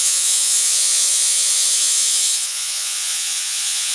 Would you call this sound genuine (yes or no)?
no